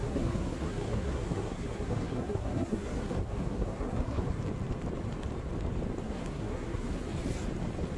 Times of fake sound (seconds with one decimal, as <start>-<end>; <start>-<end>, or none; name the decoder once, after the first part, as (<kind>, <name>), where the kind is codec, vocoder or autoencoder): 0.0-4.3 (codec, SNAC); 6.0-7.0